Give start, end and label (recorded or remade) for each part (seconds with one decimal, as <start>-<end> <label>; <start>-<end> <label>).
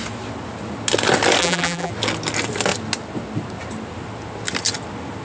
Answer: 0.0-1.4 recorded; 1.4-1.9 remade; 1.9-5.2 recorded